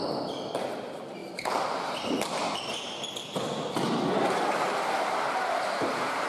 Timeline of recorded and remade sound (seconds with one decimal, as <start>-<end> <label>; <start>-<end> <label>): 0.0-6.3 recorded